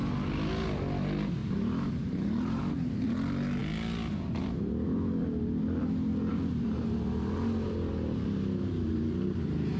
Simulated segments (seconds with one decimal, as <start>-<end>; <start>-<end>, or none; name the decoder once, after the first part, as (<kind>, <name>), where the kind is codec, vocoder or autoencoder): 1.4-2.7 (vocoder, BigVGAN v2); 6.3-9.8